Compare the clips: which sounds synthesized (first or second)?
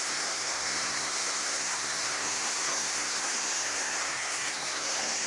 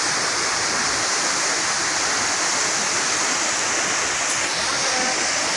first